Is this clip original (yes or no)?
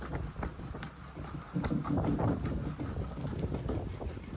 yes